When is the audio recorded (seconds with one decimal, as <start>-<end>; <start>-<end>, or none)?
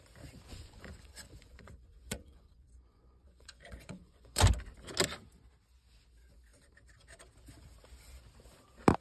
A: 0.0-0.5; 4.4-9.0